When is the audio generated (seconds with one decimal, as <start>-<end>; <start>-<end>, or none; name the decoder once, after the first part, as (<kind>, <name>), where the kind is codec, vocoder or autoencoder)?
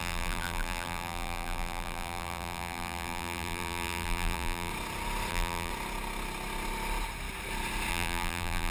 0.0-4.7 (vocoder, BigVGAN v2); 5.3-5.7; 7.9-8.7